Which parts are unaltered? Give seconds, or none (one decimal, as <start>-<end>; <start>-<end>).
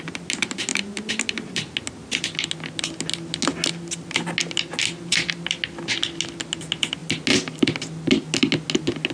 0.0-9.1